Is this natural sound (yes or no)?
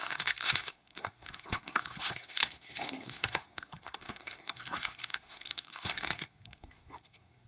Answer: no